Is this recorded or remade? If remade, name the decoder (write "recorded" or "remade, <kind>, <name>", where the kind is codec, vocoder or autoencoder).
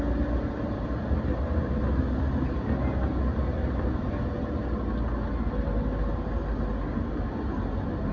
recorded